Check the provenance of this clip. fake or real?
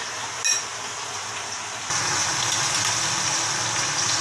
real